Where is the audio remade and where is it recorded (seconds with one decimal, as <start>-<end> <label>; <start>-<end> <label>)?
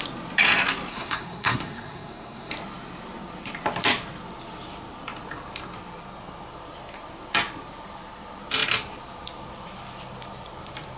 0.0-0.9 recorded; 0.9-2.5 remade; 2.5-11.0 recorded